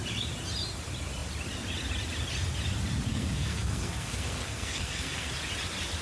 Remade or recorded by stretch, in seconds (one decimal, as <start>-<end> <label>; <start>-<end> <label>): 0.0-3.1 recorded; 3.1-5.3 remade; 5.3-6.0 recorded